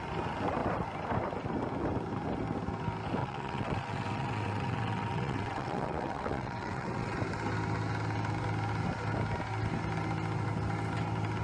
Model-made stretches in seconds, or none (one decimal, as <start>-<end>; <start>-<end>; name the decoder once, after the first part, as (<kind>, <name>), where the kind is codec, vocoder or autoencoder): 3.2-7.2 (vocoder, WaveNeXt)